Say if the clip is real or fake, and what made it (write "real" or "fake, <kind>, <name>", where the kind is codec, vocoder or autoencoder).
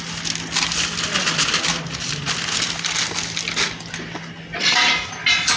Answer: real